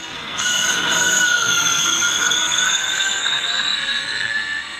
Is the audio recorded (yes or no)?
no